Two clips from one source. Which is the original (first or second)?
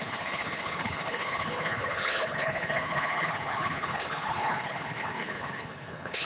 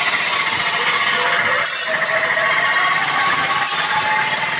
second